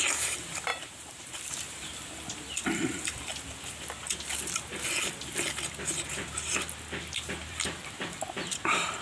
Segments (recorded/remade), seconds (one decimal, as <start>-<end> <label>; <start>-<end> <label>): 0.0-1.9 remade; 1.9-2.6 recorded; 2.6-3.3 remade; 3.3-7.2 recorded; 7.2-9.0 remade